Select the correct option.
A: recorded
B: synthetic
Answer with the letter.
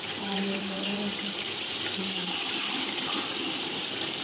B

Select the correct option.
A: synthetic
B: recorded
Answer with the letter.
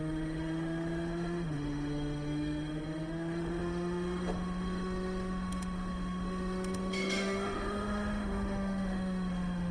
A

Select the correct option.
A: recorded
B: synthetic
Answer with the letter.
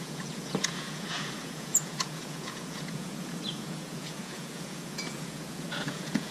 B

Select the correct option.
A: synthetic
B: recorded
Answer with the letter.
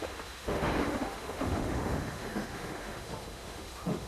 A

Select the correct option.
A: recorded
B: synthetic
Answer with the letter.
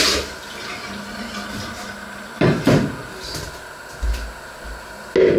A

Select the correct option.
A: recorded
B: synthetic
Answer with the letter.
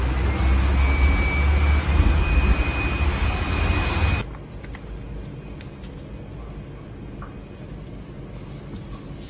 A